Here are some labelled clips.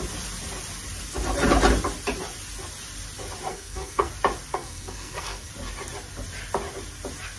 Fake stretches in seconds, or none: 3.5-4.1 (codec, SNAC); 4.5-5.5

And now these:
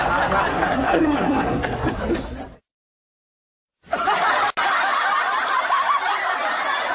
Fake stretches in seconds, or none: 0.5-2.0 (codec, SNAC)

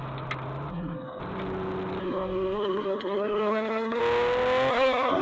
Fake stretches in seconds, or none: 0.7-1.2 (codec, SNAC); 2.0-4.0; 4.7-5.2

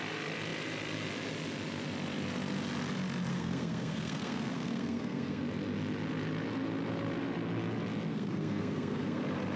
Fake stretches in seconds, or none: 3.3-5.4 (codec, SNAC); 8.1-9.2

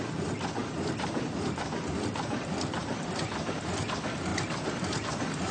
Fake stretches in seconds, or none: none

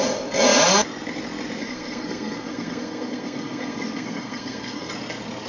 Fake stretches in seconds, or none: 1.6-4.9 (codec, SNAC)

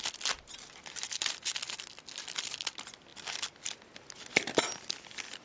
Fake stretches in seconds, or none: none

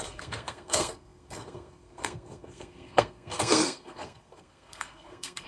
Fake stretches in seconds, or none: 0.0-5.5 (codec, SNAC)